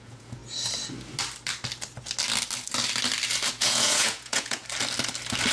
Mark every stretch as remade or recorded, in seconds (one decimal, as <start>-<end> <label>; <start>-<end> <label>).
0.0-0.4 remade; 0.4-3.5 recorded; 3.5-4.6 remade; 4.6-5.5 recorded